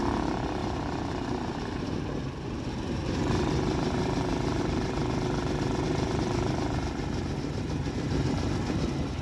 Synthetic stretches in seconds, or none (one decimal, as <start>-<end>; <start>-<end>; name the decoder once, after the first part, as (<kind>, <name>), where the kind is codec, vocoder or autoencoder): 0.0-9.2 (vocoder, BigVGAN v2)